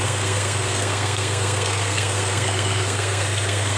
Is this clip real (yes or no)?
no